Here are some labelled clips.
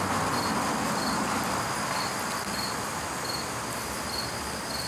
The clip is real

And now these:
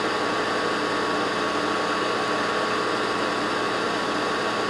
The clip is real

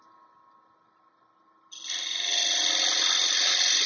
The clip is real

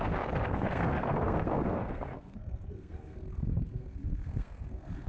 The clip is fake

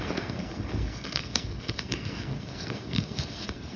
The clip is fake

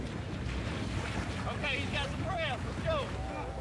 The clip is real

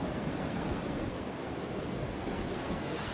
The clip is fake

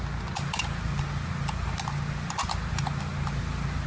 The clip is real